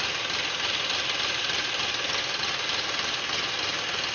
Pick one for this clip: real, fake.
real